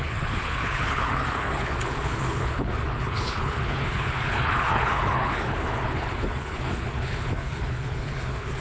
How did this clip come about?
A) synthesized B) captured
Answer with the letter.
A